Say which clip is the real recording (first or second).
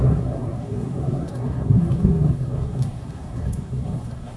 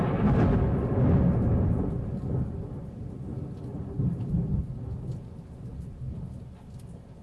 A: second